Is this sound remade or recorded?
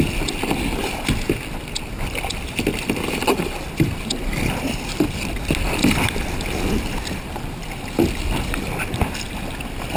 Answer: recorded